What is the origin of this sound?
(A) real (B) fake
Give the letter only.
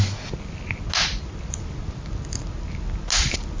A